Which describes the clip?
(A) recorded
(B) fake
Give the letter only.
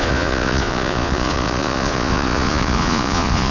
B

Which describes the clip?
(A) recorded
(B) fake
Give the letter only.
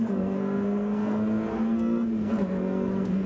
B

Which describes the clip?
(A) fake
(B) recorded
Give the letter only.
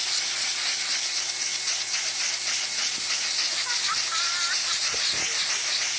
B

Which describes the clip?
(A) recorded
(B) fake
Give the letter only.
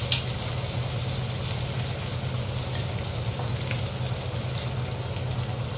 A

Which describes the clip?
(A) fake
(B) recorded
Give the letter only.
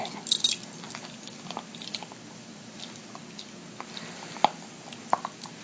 B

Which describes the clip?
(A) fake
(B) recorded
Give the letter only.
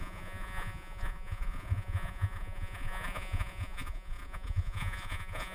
A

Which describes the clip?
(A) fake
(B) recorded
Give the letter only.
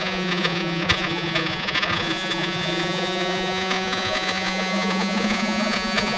A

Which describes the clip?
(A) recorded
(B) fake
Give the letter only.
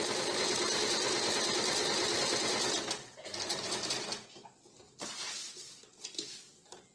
A